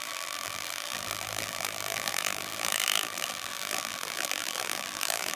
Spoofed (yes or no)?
yes